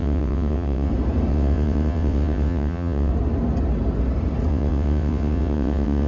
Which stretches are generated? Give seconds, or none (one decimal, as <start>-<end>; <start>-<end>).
0.0-0.9; 1.3-3.1; 4.5-6.1